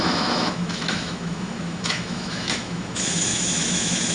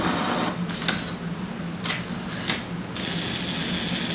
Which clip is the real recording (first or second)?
second